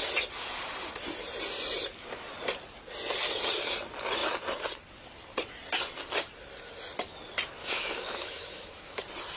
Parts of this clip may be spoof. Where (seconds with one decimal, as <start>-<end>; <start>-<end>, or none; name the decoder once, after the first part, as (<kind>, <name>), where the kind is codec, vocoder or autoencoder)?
7.6-9.0 (autoencoder, DAC-VAE)